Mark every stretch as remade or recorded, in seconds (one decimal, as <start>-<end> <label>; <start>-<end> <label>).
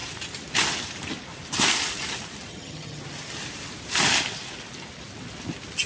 0.0-2.5 recorded; 2.5-3.0 remade; 3.0-5.9 recorded